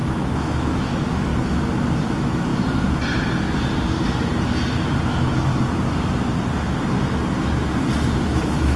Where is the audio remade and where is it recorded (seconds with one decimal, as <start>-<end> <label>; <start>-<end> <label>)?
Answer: 0.0-1.3 remade; 1.3-2.0 recorded; 2.0-2.5 remade; 2.5-5.1 recorded; 5.1-5.5 remade; 5.5-8.4 recorded; 8.4-8.8 remade